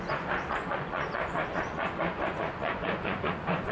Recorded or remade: remade